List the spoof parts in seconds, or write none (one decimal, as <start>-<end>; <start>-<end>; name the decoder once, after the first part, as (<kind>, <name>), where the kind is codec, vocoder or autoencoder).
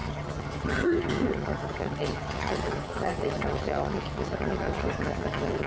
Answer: 0.0-5.7 (vocoder, HiFi-GAN)